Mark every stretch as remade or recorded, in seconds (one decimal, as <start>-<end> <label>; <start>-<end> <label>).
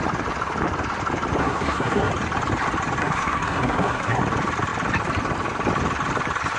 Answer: 0.0-1.4 recorded; 1.4-2.1 remade; 2.1-3.0 recorded; 3.0-4.2 remade; 4.2-6.6 recorded